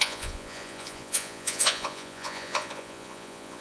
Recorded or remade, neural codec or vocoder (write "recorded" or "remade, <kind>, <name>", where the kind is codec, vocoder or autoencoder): remade, vocoder, Vocos